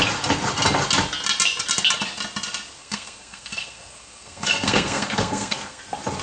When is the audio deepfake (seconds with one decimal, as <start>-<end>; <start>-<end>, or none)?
2.8-5.8